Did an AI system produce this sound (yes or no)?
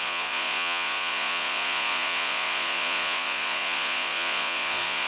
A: yes